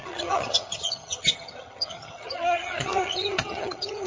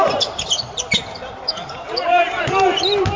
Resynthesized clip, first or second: first